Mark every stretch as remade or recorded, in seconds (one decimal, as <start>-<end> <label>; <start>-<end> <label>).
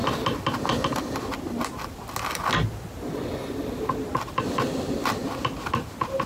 0.0-5.2 recorded; 5.2-6.3 remade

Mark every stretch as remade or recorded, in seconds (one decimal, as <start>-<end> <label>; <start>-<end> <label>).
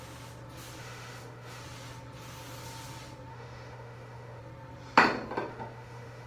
0.0-0.8 recorded; 0.8-1.6 remade; 1.6-3.3 recorded; 3.3-4.4 remade; 4.4-5.5 recorded; 5.5-6.3 remade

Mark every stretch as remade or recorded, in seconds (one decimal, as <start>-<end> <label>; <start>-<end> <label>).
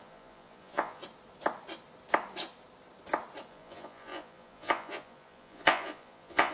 0.0-1.0 remade; 1.0-3.5 recorded; 3.5-6.5 remade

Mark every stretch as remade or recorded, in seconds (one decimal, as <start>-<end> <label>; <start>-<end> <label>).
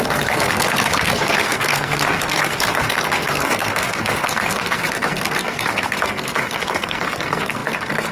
0.0-8.1 remade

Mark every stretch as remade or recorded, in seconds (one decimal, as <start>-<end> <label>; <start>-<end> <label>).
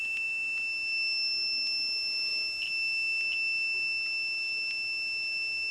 0.0-5.7 recorded